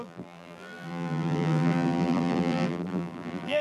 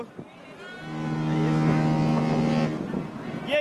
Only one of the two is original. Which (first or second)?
second